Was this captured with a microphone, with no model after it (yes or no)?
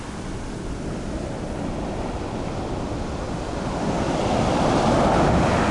yes